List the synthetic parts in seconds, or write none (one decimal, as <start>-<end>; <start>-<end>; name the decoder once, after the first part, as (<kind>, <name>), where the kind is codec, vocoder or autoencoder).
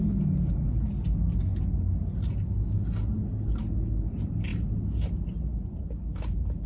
none